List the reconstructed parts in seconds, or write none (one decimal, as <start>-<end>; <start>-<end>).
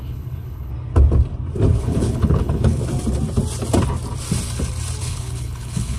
0.0-0.7; 1.8-2.8; 5.0-6.0